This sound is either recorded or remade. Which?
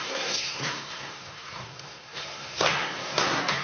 remade